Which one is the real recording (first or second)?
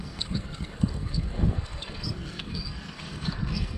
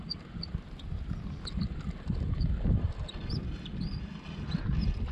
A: second